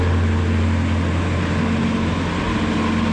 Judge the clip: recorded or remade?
recorded